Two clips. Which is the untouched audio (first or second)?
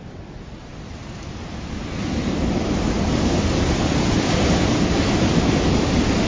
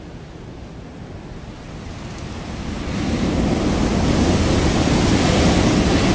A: second